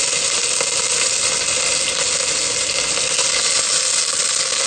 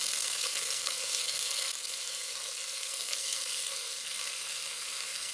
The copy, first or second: second